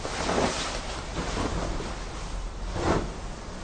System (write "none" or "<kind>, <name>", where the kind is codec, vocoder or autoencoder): none